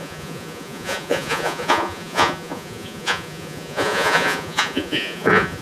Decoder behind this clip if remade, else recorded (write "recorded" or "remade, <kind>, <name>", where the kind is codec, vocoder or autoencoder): remade, vocoder, Vocos